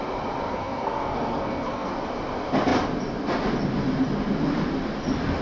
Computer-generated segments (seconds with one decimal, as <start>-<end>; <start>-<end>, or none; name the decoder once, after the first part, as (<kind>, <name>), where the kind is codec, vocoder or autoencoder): 0.5-1.9 (codec, SNAC)